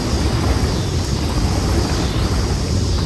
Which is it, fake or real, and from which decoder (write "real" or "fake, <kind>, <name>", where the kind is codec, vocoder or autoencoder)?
real